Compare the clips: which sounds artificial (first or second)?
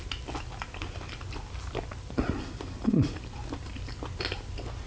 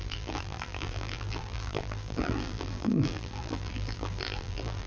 second